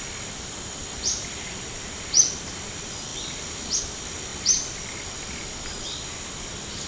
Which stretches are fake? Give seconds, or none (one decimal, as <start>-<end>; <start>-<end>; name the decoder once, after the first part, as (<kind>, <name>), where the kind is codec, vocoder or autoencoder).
none